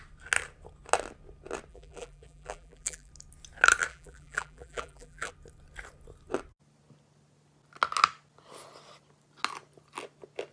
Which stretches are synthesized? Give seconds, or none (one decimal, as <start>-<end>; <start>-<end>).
1.7-3.1; 3.9-5.3